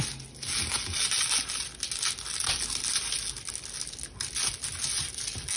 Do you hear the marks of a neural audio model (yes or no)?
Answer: no